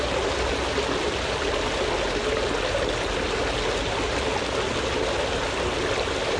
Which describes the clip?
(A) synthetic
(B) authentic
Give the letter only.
B